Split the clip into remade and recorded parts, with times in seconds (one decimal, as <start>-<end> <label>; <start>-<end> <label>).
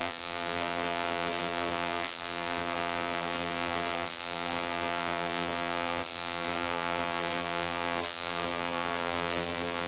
0.0-9.9 remade